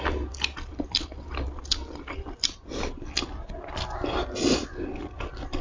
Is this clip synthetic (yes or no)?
no